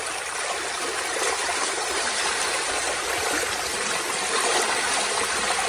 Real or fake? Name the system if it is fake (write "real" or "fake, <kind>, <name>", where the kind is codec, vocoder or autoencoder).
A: real